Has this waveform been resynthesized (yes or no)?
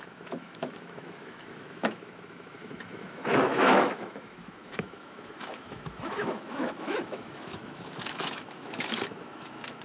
yes